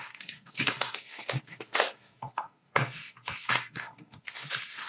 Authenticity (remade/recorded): remade